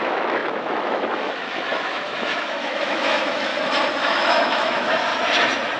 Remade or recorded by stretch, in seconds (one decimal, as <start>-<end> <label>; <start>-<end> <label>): 0.0-3.5 remade; 3.5-4.0 recorded; 4.0-5.1 remade; 5.1-5.8 recorded